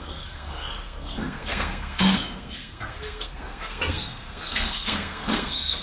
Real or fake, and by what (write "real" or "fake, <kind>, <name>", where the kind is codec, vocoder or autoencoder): fake, codec, SNAC